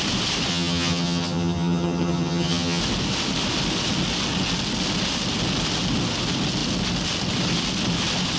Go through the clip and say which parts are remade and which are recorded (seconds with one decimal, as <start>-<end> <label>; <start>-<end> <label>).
0.0-0.5 recorded; 0.5-2.8 remade; 2.8-8.4 recorded